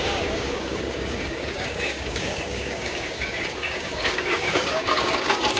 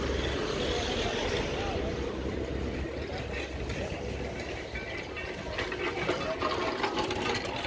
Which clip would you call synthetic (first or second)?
first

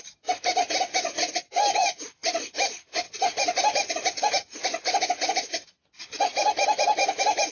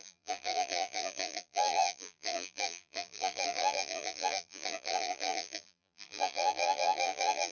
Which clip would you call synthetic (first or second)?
second